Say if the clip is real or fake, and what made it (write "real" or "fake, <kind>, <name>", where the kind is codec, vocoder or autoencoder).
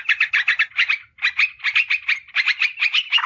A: real